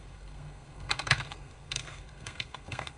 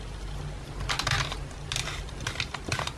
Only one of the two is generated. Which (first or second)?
first